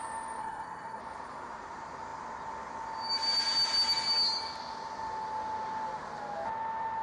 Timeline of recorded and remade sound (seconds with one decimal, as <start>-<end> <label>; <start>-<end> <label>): 0.0-0.4 recorded; 0.4-1.0 remade; 1.0-7.0 recorded